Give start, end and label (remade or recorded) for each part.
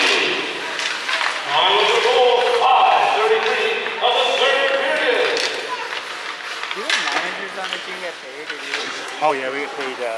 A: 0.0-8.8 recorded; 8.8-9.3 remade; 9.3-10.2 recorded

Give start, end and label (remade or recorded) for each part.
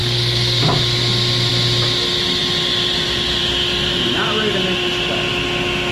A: 0.0-0.6 remade; 0.6-5.9 recorded